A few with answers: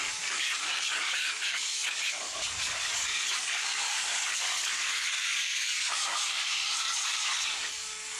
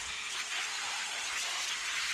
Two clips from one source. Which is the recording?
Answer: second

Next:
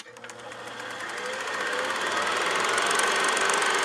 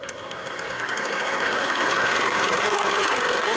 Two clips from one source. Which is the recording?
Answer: first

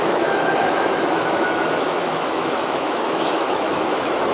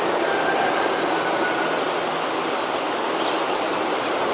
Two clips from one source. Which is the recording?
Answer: second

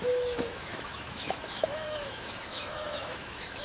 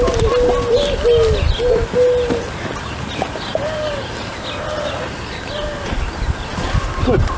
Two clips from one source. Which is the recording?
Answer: second